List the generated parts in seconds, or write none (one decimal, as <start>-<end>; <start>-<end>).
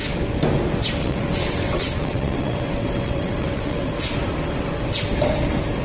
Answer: 1.0-3.9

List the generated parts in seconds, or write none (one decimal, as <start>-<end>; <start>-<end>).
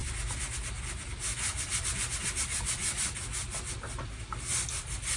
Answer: none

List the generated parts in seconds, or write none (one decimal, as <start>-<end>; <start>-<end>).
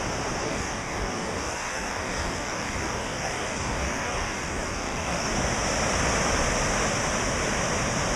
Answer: 0.4-5.3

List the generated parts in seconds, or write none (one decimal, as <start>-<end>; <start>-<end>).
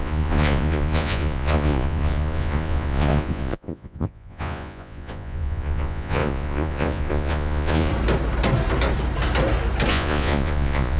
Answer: 0.0-7.9; 9.9-11.0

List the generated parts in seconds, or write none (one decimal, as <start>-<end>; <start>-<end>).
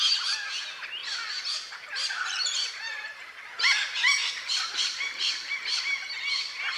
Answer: 1.0-3.2; 4.2-5.8